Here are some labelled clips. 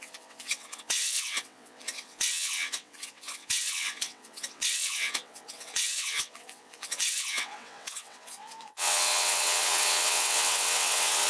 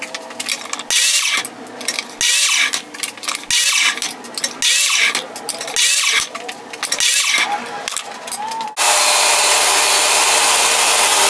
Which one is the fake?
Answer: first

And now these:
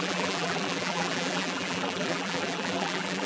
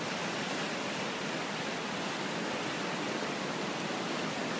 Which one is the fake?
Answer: first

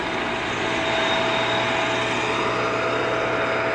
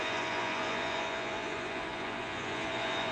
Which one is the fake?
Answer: second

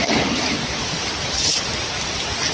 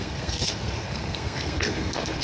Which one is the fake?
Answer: second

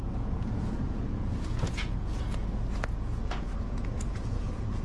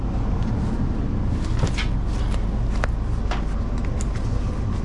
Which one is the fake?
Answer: first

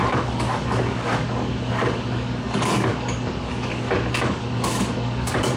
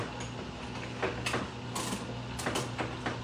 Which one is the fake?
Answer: first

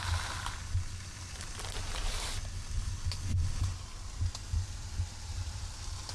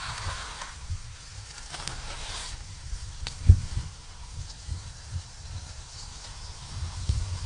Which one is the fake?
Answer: second